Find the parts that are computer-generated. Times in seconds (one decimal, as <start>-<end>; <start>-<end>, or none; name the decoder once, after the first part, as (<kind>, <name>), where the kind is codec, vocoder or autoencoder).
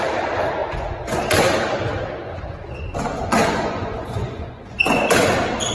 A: 0.6-1.2 (vocoder, Vocos); 2.2-5.0